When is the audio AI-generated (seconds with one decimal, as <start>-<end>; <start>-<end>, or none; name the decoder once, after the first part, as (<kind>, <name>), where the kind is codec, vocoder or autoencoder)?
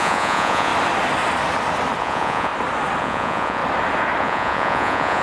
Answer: 0.0-0.7 (vocoder, Vocos); 2.0-2.5; 3.0-3.6; 4.2-5.2